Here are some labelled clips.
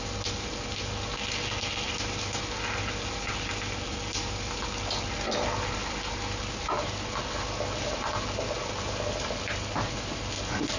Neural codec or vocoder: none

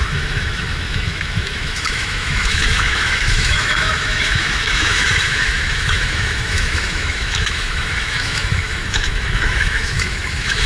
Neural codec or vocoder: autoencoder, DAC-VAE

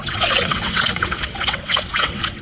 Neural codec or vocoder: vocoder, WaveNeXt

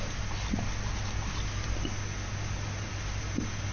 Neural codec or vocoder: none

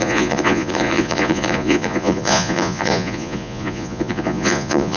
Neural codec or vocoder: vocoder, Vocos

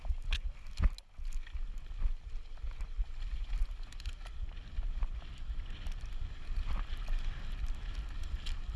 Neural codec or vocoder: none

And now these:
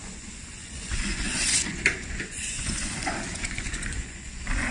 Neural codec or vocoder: vocoder, Vocos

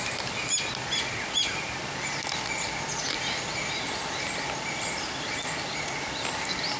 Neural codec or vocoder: none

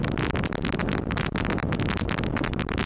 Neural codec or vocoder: none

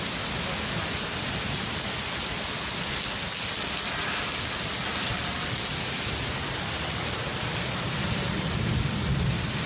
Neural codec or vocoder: none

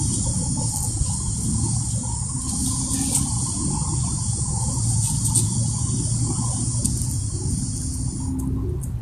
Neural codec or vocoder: none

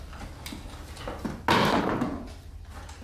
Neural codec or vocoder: none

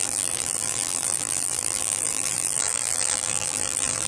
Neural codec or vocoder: vocoder, BigVGAN v2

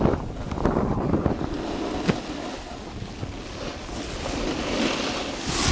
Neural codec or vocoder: none